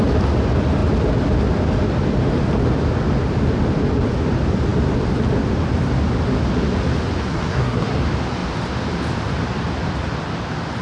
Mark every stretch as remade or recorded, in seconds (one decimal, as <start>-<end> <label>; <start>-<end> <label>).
0.0-7.3 recorded; 7.3-8.0 remade; 8.0-10.8 recorded